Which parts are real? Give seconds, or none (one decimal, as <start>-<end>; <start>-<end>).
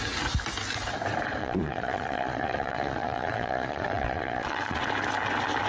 0.0-1.4; 4.8-5.7